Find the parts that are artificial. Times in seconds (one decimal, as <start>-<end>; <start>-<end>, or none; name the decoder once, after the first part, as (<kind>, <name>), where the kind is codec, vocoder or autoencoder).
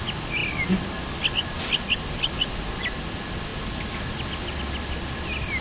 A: none